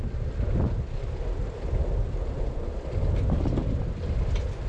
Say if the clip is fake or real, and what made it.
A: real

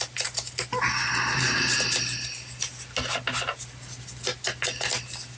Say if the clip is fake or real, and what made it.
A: real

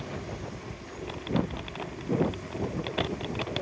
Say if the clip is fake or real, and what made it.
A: real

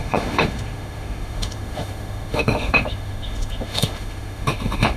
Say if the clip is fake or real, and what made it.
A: fake, autoencoder, DAC-VAE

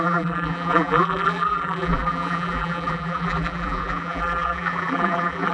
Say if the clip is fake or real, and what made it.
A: fake, vocoder, BigVGAN v2